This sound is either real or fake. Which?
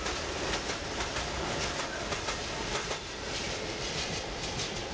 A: real